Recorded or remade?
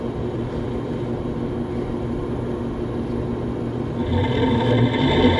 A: recorded